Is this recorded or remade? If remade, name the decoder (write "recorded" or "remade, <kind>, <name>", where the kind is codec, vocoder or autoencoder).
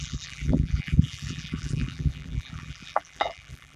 remade, vocoder, BigVGAN v2